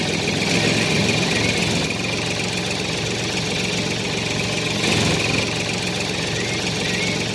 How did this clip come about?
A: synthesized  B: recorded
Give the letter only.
B